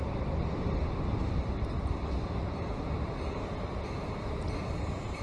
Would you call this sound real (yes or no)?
no